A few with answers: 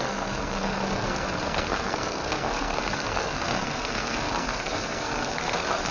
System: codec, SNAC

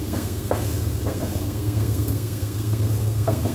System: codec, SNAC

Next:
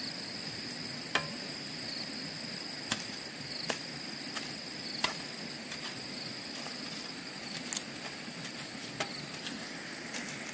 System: none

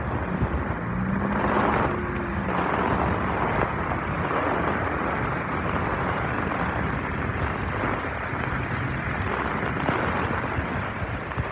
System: none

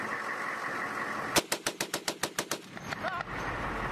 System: none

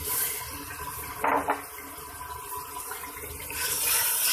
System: none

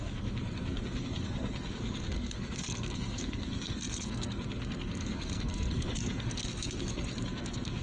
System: codec, SNAC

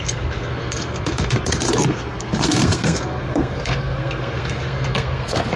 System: codec, SNAC